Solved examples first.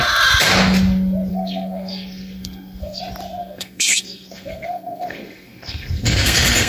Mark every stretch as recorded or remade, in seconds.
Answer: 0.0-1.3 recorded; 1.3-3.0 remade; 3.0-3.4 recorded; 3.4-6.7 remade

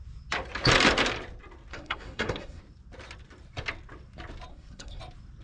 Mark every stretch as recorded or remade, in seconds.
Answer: 0.0-1.7 recorded; 1.7-2.6 remade; 2.6-4.5 recorded; 4.5-5.0 remade; 5.0-5.4 recorded

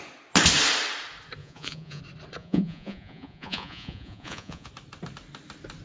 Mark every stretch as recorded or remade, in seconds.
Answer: 0.0-1.4 recorded; 1.4-2.0 remade; 2.0-2.4 recorded; 2.4-4.7 remade; 4.7-5.8 recorded